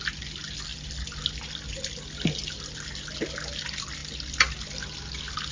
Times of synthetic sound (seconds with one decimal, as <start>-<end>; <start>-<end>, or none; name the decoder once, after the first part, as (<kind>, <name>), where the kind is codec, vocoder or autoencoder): none